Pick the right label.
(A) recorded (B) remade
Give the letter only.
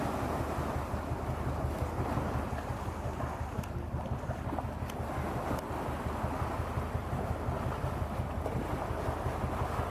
A